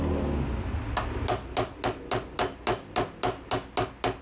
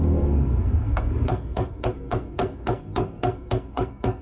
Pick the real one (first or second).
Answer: first